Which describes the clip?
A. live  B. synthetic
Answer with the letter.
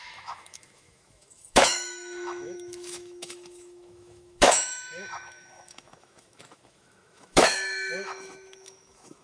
B